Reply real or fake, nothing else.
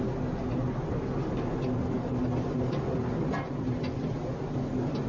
real